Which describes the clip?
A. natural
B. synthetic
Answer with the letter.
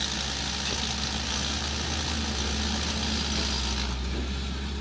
A